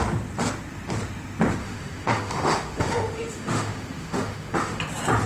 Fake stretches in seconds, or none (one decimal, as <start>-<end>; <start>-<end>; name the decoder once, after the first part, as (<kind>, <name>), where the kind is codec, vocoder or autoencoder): 1.6-4.8 (autoencoder, DAC-VAE)